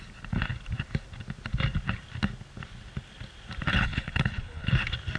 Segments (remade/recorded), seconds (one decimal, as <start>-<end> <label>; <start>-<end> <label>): 0.0-3.7 recorded; 3.7-4.7 remade; 4.7-5.2 recorded